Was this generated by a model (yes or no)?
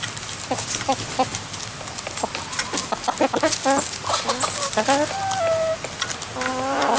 no